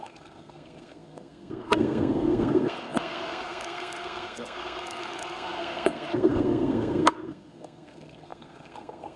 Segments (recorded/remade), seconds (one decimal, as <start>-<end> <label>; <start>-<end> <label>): 0.0-9.2 remade